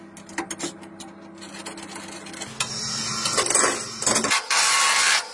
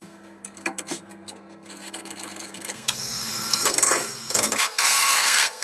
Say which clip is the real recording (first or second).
first